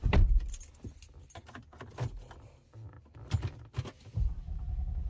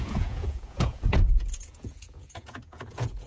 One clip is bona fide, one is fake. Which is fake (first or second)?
second